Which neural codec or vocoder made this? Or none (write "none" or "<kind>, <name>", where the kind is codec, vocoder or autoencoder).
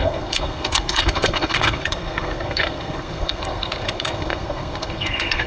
codec, SNAC